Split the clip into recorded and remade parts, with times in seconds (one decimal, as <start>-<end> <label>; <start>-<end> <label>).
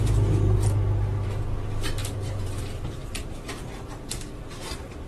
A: 0.0-2.0 recorded; 2.0-3.9 remade; 3.9-5.1 recorded